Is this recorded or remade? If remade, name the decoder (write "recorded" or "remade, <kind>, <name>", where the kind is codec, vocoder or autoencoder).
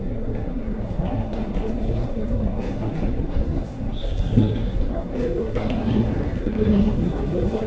remade, codec, SNAC